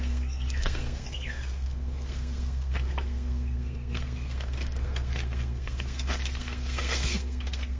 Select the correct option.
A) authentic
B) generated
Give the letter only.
B